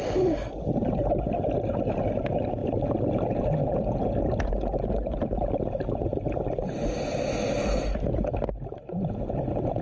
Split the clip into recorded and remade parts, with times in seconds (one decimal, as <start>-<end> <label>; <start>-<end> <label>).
0.0-9.8 recorded